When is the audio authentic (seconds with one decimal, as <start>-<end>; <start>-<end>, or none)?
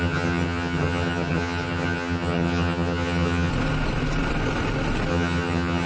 3.5-5.1